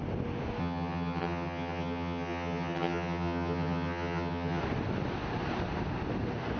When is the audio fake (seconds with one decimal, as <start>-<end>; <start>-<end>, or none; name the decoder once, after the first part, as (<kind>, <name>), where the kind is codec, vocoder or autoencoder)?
0.6-4.6 (vocoder, HiFi-GAN)